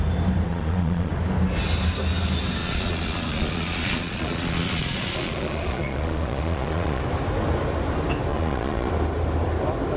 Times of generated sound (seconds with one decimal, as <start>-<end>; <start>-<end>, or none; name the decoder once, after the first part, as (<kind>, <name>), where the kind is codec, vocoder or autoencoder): 0.5-1.1 (vocoder, Vocos); 2.6-7.0; 8.3-8.9